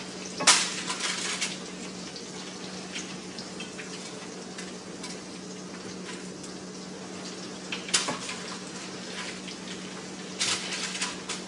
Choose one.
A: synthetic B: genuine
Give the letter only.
B